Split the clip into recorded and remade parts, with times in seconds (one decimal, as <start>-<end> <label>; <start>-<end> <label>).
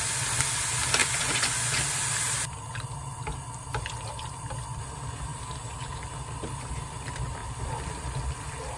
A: 0.0-1.0 recorded; 1.0-1.8 remade; 1.8-8.8 recorded